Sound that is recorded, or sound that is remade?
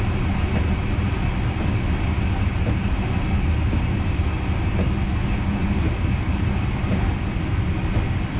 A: recorded